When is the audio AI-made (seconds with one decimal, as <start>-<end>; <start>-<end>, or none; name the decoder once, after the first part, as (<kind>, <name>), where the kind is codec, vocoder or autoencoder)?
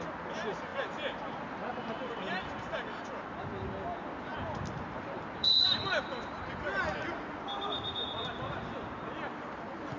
4.3-6.0 (vocoder, BigVGAN v2)